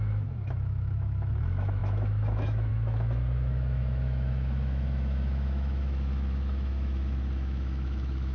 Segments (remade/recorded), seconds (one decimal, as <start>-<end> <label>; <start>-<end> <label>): 0.0-8.3 remade